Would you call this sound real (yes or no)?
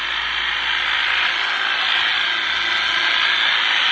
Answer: yes